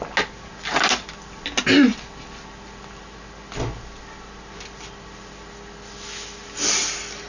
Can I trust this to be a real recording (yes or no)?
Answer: yes